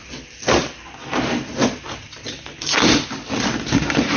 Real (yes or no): no